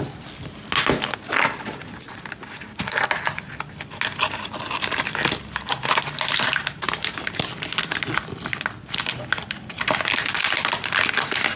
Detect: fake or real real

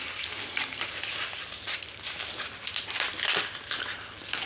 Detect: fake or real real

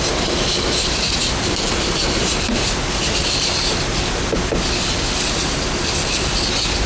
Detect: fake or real real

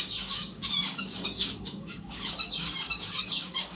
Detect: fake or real fake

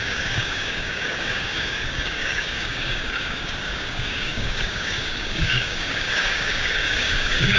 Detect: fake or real fake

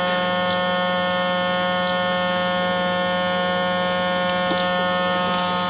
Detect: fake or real real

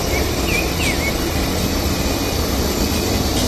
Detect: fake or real real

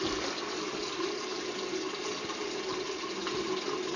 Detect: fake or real real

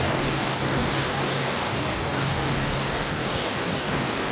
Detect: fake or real fake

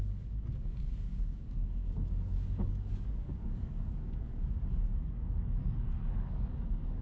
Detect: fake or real fake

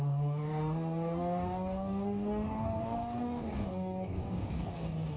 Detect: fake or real fake